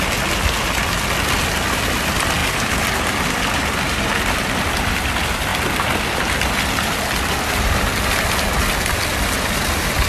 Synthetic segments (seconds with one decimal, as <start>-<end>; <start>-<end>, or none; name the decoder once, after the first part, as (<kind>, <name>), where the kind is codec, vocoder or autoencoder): none